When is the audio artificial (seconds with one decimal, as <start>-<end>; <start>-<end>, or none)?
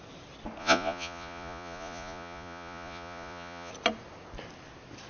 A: 0.6-3.7